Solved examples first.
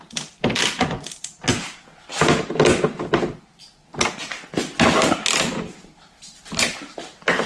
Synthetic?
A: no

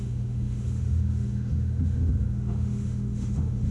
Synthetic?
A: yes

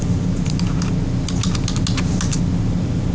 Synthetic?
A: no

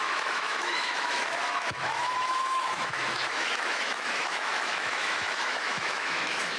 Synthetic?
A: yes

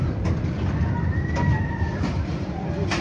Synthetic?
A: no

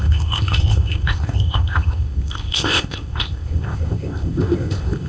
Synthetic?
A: yes